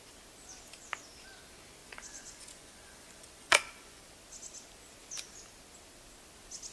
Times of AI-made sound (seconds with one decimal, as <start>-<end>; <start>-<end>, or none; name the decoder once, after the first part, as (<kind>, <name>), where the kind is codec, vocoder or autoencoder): 1.8-4.0 (vocoder, Vocos)